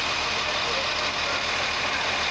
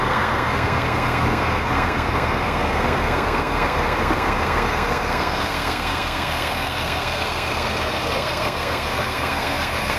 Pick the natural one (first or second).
first